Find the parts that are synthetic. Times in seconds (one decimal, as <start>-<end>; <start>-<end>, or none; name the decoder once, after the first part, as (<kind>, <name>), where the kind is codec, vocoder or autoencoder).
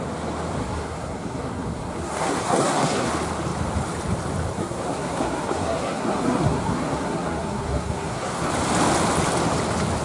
0.6-3.1 (codec, SNAC); 4.5-8.5